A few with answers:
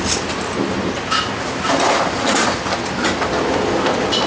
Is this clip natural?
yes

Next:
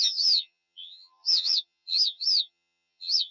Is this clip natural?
no